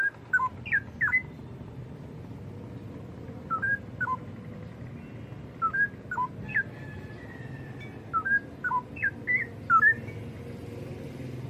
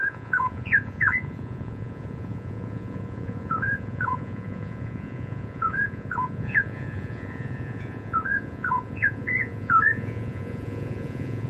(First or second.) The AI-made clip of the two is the second